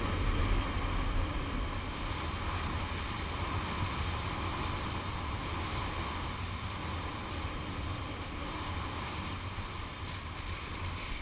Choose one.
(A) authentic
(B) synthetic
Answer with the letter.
A